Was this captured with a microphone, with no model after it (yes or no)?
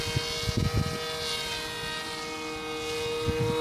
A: yes